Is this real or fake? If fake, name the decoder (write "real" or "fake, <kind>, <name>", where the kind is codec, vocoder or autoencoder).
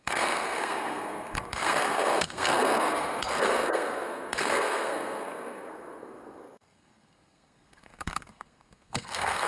fake, codec, SNAC